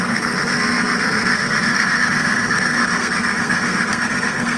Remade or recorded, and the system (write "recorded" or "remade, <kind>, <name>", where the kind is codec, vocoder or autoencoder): remade, codec, SNAC